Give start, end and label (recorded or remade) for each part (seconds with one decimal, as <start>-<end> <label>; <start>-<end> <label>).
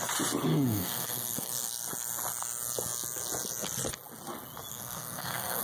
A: 0.0-0.5 recorded; 0.5-1.7 remade; 1.7-4.7 recorded; 4.7-5.6 remade